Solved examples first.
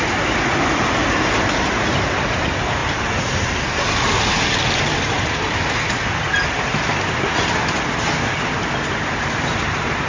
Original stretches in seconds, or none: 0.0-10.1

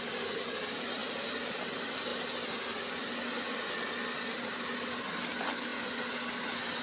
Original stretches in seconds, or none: 0.0-6.8

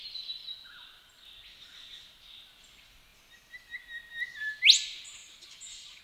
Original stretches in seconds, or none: 0.0-5.2